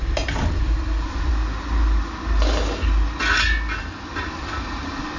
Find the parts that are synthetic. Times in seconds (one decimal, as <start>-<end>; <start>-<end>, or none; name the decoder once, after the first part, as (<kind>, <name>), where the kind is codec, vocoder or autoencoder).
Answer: 0.0-1.3 (vocoder, BigVGAN v2); 3.8-5.2